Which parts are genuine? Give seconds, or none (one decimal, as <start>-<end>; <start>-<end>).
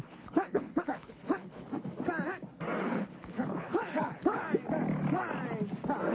1.7-2.8; 4.4-6.1